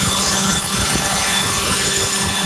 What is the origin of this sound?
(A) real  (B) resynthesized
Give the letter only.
B